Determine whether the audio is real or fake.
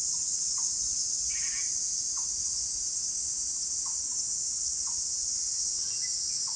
real